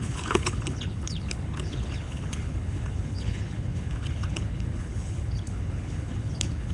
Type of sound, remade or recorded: remade